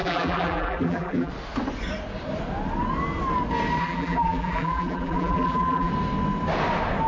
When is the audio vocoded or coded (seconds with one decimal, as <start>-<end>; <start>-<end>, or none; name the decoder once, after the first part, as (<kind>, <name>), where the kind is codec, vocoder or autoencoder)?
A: 0.0-1.3 (vocoder, BigVGAN v2); 3.8-5.9